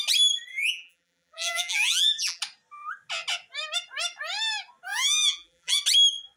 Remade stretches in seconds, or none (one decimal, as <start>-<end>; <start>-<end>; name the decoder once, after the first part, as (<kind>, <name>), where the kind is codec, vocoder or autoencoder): 0.5-2.4 (vocoder, BigVGAN v2); 4.9-5.8